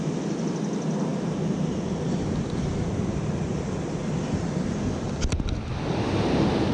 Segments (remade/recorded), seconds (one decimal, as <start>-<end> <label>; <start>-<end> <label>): 0.0-6.7 recorded